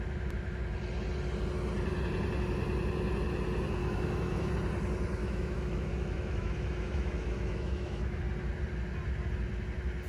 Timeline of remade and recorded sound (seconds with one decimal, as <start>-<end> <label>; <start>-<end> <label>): 0.0-3.8 recorded; 3.8-4.5 remade; 4.5-5.2 recorded; 5.2-8.2 remade; 8.2-10.1 recorded